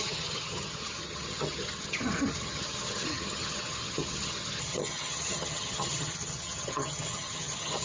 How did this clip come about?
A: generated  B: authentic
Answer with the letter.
A